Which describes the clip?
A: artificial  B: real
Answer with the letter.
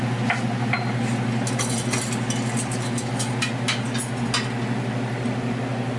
B